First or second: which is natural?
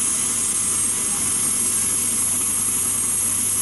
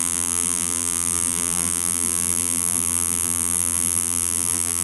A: first